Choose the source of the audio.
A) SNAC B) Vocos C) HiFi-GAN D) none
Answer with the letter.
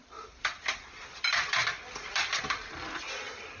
D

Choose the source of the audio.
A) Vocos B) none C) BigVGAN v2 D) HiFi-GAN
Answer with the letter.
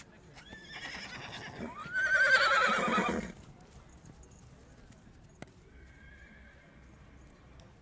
B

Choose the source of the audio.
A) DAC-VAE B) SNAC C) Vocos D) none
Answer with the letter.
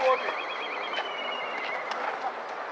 D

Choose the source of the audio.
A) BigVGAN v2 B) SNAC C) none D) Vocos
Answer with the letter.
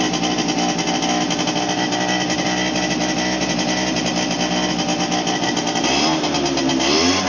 C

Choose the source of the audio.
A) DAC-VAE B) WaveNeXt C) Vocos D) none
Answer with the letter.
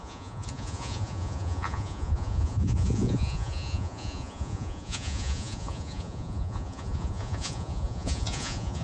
C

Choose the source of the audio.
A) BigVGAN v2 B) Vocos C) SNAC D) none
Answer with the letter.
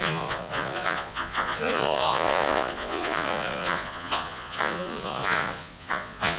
B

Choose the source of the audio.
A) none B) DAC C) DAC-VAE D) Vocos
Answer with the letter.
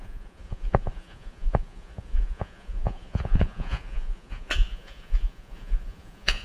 D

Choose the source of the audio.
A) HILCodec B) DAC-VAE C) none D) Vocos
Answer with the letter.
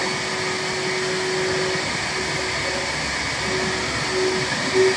C